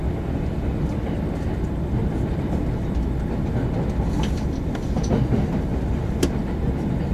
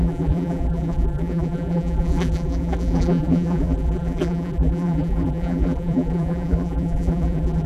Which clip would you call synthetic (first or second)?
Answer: second